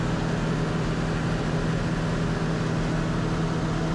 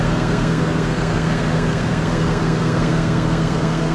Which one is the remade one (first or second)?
second